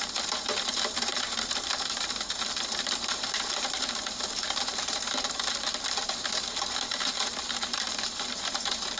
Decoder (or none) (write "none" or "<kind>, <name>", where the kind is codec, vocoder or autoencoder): vocoder, BigVGAN v2